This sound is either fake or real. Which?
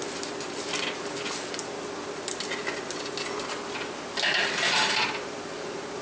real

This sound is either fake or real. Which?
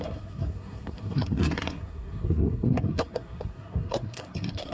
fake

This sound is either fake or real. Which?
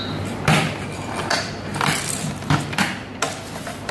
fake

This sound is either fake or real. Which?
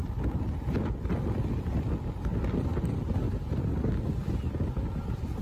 real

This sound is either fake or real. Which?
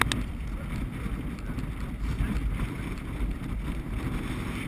real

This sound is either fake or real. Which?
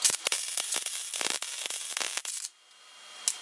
real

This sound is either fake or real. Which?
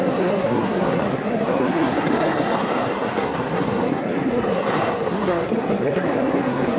fake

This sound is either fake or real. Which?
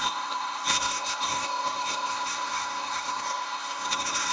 fake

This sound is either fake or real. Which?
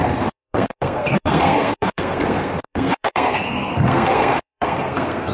fake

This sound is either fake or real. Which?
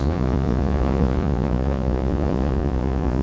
fake